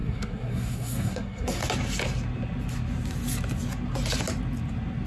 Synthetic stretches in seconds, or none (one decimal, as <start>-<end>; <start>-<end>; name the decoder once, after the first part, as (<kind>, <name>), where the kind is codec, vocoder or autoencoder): 0.0-1.6 (codec, SNAC)